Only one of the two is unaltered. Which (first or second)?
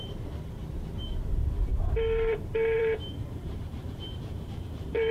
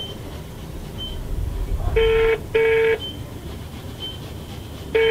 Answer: second